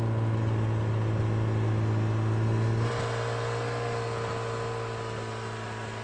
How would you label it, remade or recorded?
recorded